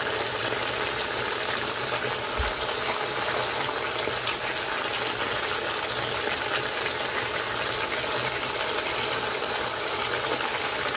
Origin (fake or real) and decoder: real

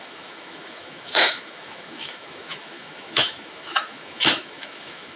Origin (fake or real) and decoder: fake, autoencoder, DAC-VAE